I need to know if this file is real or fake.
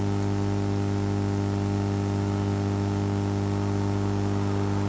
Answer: real